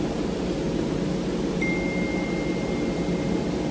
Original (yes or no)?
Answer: yes